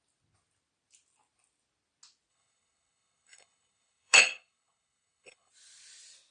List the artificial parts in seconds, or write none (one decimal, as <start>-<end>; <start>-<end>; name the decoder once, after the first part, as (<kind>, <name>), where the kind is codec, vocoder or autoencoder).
2.3-5.5 (codec, HILCodec)